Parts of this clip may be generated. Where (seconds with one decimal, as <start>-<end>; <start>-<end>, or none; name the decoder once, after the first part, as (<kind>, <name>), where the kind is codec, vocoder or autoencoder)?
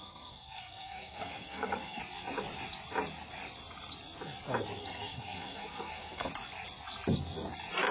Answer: 0.0-2.0 (codec, SNAC); 4.8-6.3